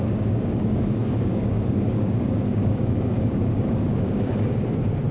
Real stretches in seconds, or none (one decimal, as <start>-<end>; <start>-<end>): none